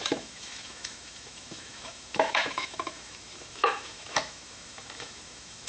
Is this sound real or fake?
fake